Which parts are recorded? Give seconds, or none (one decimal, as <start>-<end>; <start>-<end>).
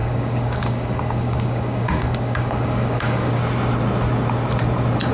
3.4-5.1